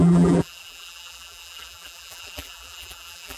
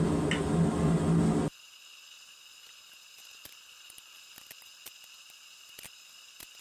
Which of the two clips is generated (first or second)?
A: first